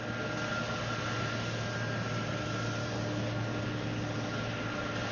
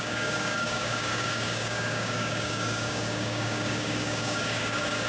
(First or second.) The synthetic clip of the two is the second